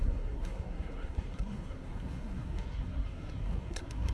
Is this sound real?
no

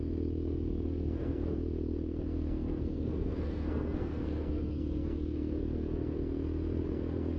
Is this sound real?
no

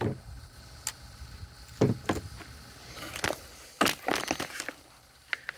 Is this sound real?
yes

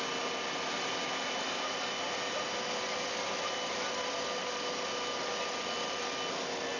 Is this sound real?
yes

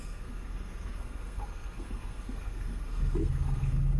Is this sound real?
no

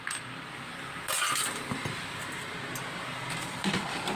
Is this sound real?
yes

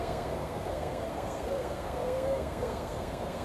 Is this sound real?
no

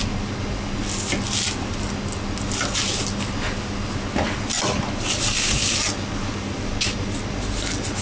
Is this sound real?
yes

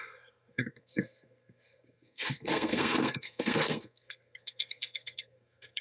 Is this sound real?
no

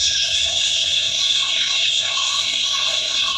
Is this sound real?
no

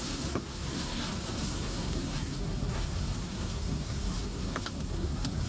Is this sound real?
no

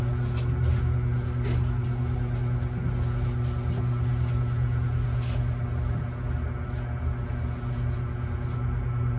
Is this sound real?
yes